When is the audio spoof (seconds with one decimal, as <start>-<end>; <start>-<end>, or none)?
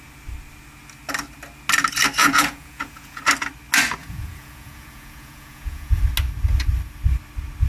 2.2-3.2; 4.0-6.0